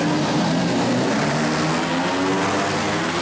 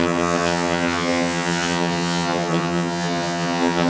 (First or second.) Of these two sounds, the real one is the first